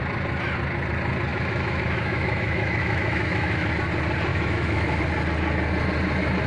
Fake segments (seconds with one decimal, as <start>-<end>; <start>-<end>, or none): 1.3-3.7; 4.3-5.0